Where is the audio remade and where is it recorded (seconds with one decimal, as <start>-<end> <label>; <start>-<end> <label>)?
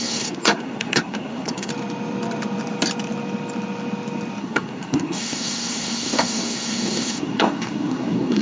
0.0-1.7 remade; 1.7-4.4 recorded; 4.4-8.4 remade